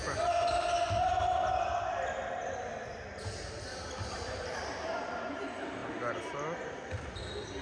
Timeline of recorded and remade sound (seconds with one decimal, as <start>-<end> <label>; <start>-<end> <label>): 0.0-4.1 recorded; 4.1-5.8 remade; 5.8-6.7 recorded; 6.7-7.6 remade